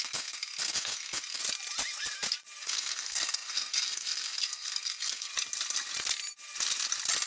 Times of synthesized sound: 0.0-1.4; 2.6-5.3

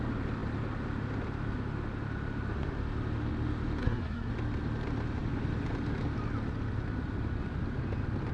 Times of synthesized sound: 3.8-4.3

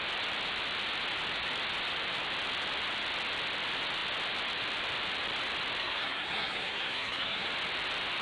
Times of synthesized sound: 5.8-7.5

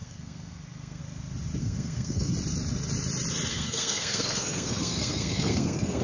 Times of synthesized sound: 0.0-1.0; 1.6-2.3; 3.5-6.0

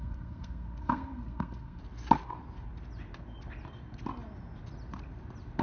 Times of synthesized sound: 0.0-1.8

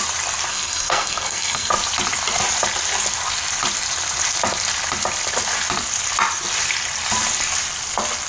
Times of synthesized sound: 0.5-1.7